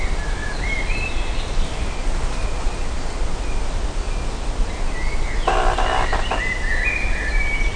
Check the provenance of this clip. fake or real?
real